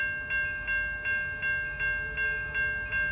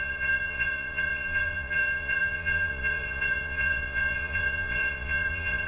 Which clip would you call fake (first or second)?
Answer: second